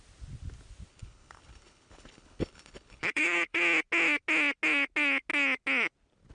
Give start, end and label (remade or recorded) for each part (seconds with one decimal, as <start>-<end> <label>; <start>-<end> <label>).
0.0-0.9 recorded; 0.9-3.6 remade; 3.6-6.3 recorded